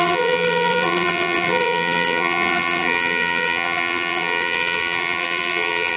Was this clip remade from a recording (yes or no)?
yes